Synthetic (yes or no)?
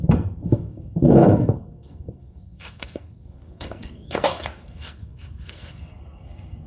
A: yes